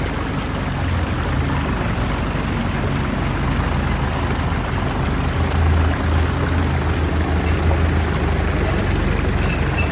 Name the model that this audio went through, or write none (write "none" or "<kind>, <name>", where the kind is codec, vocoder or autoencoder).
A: none